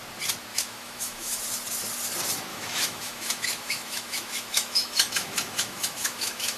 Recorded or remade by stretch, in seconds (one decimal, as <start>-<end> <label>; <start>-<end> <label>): 0.0-0.5 recorded; 0.5-1.4 remade; 1.4-2.5 recorded; 2.5-6.6 remade